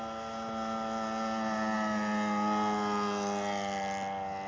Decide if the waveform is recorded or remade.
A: recorded